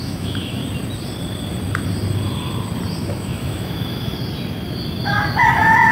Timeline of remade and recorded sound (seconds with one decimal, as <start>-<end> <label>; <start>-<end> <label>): 0.0-0.6 remade; 0.6-3.0 recorded; 3.0-4.1 remade; 4.1-5.9 recorded